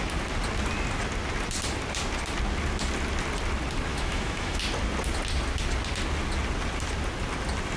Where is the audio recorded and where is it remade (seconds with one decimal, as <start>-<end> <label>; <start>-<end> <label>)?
0.0-3.9 recorded; 3.9-4.6 remade; 4.6-7.8 recorded